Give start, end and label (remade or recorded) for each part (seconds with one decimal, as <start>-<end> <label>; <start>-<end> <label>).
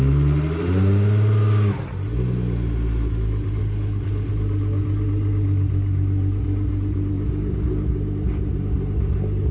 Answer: 0.0-3.6 recorded; 3.6-4.3 remade; 4.3-9.5 recorded